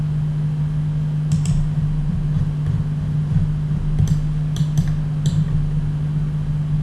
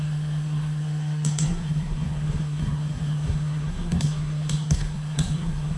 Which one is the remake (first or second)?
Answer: second